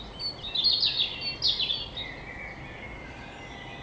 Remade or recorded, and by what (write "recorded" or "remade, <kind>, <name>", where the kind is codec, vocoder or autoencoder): recorded